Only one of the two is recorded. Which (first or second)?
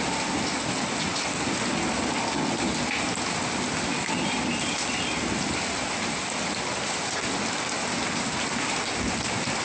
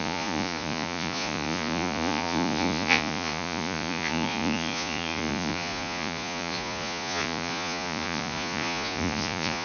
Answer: first